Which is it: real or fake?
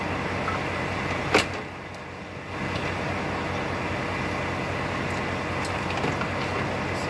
real